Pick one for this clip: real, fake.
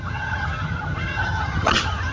fake